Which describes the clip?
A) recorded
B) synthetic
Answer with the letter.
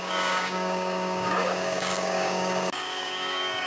B